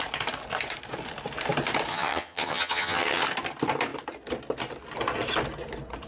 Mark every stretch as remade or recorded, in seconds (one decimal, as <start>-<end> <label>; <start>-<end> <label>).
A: 0.0-1.9 recorded; 1.9-3.2 remade; 3.2-6.1 recorded